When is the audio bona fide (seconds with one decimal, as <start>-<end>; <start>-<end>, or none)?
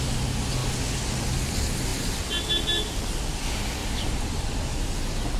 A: 0.0-3.8; 4.9-5.4